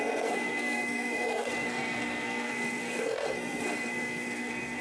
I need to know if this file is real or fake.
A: fake